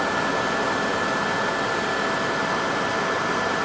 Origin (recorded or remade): recorded